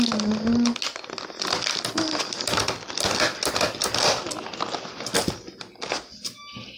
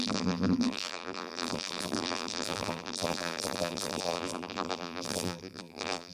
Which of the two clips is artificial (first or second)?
second